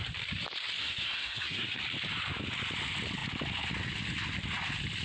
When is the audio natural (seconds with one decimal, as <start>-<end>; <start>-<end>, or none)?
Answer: 0.0-0.8; 1.8-5.0